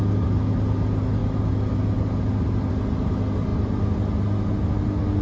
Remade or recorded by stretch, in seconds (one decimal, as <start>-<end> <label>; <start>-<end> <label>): 0.0-5.2 recorded